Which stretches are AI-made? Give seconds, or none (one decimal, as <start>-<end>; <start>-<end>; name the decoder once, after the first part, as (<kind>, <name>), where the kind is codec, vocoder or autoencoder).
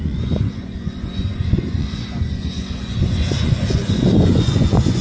0.0-5.0 (vocoder, Vocos)